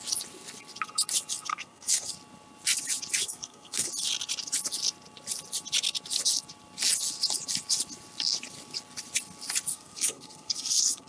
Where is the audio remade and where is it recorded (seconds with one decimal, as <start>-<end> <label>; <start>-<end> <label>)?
0.0-1.5 recorded; 1.5-2.1 remade; 2.1-3.2 recorded; 3.2-3.9 remade; 3.9-9.7 recorded; 9.7-11.1 remade